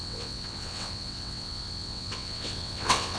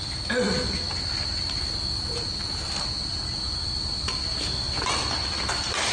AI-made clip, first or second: first